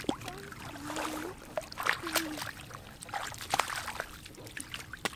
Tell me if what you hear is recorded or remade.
recorded